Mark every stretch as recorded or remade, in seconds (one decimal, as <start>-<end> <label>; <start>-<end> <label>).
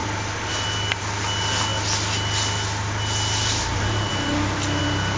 0.0-5.2 recorded